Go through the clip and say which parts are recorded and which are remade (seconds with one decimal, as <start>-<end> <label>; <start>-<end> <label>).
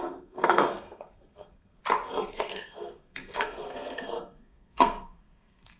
0.0-1.8 remade; 1.8-2.3 recorded; 2.3-5.8 remade